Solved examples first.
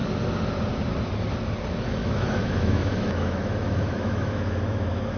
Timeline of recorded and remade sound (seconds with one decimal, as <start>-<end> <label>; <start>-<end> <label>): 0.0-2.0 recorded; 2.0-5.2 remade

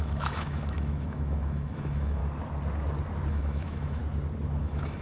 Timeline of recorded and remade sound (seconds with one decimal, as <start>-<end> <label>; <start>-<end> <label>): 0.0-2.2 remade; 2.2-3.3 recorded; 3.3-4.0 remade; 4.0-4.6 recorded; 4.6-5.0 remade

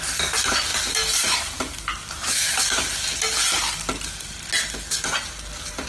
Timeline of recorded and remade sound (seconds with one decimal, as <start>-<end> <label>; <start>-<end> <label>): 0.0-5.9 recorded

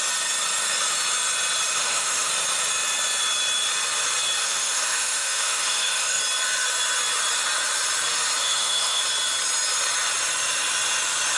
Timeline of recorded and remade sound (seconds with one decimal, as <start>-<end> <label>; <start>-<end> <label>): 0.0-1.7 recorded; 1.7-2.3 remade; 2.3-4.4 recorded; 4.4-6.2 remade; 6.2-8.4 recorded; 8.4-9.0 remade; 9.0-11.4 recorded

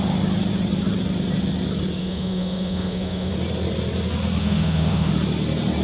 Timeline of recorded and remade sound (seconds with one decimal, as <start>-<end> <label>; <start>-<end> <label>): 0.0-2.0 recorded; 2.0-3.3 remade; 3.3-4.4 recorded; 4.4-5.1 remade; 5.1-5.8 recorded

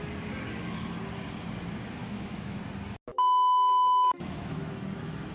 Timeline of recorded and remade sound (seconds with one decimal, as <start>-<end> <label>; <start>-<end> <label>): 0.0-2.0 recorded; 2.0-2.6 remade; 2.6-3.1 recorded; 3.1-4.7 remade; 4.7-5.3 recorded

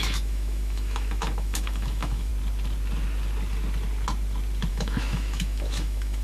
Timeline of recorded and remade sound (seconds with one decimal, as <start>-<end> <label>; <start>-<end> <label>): 0.0-2.3 remade; 2.3-4.7 recorded; 4.7-6.2 remade

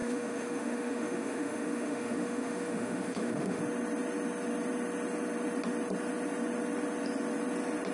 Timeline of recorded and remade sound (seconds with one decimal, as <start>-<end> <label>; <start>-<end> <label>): 0.0-3.6 remade; 3.6-7.9 recorded